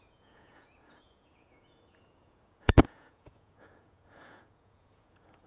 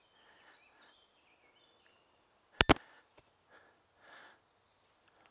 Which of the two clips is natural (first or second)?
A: second